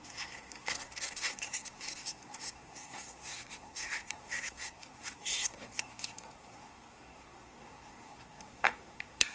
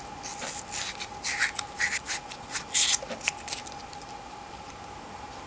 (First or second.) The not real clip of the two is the first